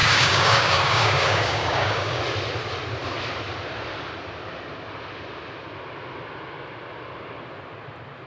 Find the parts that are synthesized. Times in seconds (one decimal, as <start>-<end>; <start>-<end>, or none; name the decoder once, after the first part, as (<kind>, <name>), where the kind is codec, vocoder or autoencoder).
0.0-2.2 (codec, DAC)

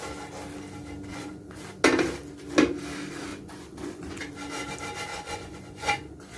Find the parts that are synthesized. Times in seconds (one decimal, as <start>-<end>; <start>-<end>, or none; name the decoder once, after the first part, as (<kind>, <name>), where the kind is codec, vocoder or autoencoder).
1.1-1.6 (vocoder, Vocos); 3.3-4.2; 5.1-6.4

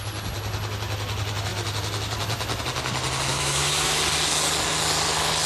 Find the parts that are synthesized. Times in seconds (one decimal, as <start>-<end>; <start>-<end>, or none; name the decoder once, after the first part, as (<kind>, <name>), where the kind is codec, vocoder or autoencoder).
3.3-4.0 (autoencoder, DAC-VAE)

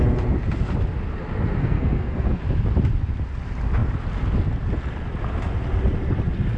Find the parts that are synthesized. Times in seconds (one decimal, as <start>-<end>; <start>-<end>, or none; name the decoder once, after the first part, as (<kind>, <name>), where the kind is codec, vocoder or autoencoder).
1.6-2.4 (codec, SNAC)